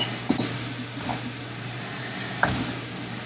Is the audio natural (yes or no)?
yes